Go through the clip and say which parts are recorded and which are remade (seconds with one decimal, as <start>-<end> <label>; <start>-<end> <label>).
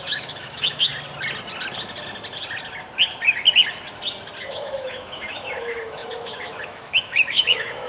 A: 0.0-0.9 remade; 0.9-4.4 recorded; 4.4-7.9 remade